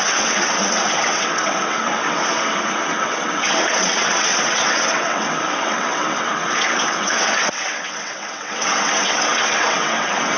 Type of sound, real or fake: fake